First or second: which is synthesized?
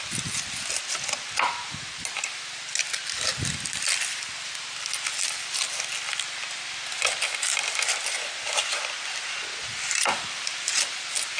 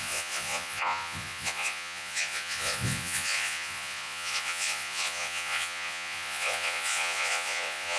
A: second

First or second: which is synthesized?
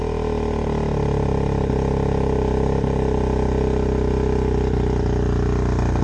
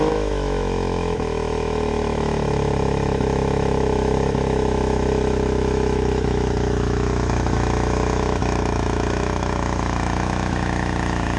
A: second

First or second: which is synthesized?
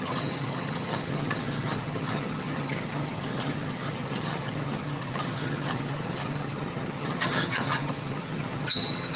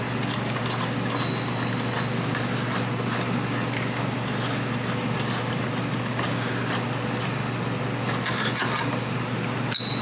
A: first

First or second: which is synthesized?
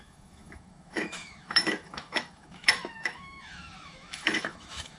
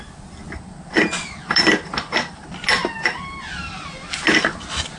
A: first